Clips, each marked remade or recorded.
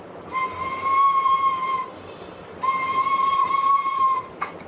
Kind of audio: remade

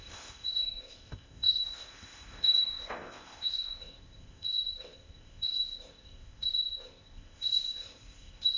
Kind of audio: remade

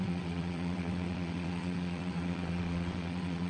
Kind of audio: remade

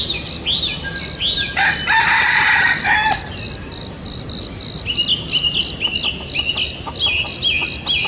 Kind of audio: recorded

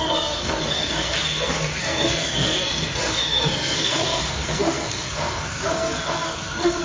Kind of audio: remade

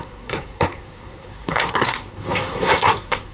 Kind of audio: remade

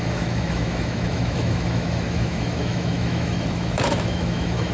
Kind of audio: remade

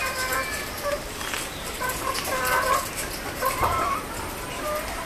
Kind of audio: recorded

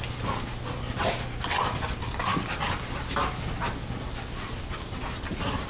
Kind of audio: recorded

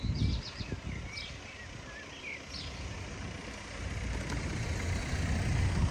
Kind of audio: recorded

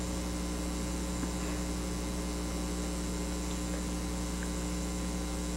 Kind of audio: recorded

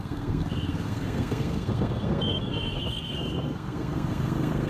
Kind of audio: remade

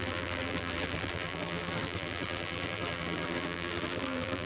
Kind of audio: remade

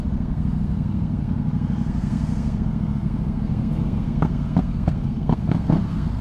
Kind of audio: remade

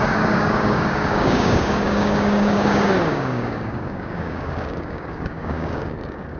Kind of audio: remade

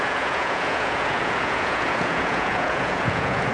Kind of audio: remade